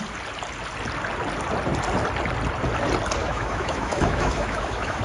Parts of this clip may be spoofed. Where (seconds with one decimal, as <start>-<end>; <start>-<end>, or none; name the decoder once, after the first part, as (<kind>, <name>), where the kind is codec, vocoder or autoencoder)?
3.2-5.0 (autoencoder, DAC-VAE)